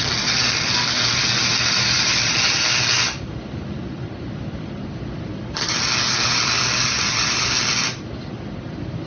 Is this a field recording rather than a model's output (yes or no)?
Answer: no